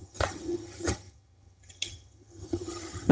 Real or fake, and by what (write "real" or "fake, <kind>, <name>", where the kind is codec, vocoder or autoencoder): fake, vocoder, HiFi-GAN